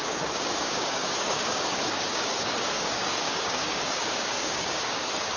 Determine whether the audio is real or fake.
fake